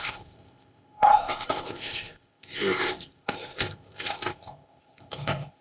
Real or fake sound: fake